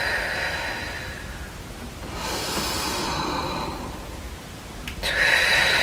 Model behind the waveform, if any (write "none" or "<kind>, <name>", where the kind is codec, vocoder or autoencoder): none